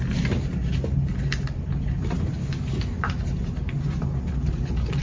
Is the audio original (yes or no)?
yes